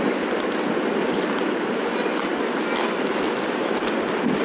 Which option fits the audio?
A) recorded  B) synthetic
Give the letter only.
A